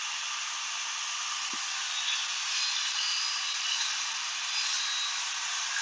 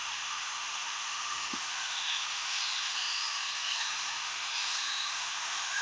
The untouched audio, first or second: first